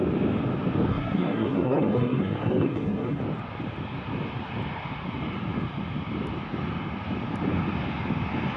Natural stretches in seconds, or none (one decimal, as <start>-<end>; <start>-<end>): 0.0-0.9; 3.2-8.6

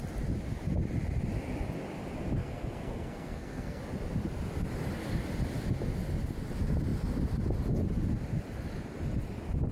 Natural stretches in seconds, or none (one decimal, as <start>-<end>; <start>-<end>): 0.0-2.4; 3.8-9.7

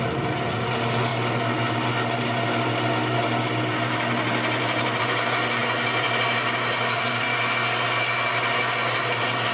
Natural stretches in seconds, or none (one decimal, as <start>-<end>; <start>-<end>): 0.0-9.5

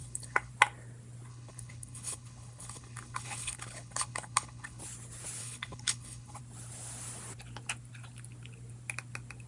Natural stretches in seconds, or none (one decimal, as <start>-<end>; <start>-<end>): 0.5-1.3; 4.8-5.4; 6.4-9.5

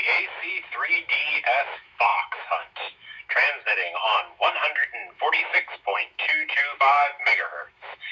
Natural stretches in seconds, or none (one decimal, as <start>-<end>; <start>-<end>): none

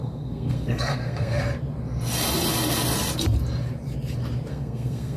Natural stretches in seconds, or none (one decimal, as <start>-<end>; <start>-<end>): 1.4-4.5